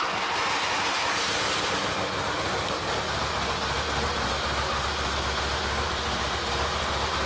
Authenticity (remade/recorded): recorded